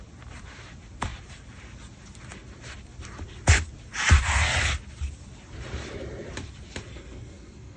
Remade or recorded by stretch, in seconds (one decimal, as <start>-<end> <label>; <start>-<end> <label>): 0.0-6.9 recorded; 6.9-7.8 remade